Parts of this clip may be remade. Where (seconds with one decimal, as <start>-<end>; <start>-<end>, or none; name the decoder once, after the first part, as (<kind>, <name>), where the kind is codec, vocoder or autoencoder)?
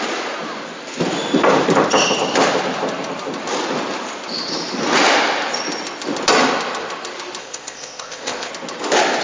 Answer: 7.4-8.5 (codec, ZipCodec)